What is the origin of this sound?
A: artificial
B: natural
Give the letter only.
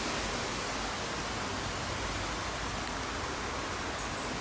B